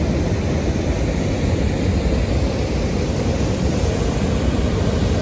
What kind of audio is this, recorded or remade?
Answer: recorded